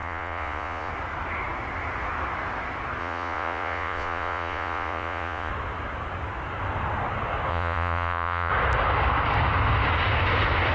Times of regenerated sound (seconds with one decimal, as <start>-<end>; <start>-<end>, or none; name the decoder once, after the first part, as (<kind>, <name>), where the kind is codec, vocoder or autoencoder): 0.0-0.9 (vocoder, Vocos); 3.0-5.5; 7.5-8.5